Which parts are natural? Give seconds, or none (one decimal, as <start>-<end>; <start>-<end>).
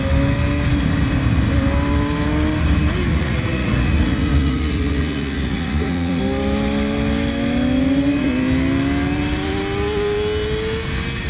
0.0-3.1; 6.2-11.3